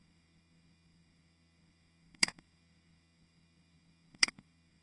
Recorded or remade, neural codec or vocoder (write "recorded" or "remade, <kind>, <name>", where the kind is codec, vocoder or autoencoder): remade, codec, SNAC